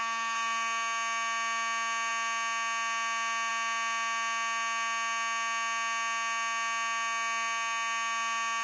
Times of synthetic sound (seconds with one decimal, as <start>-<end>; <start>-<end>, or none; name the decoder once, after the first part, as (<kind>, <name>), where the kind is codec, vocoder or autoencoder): none